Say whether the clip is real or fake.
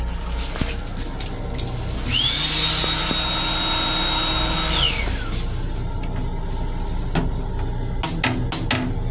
real